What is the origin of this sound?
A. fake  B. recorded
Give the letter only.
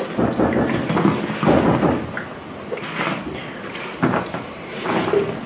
B